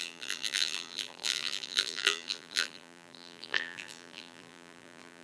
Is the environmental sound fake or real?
fake